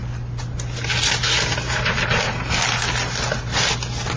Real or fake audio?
real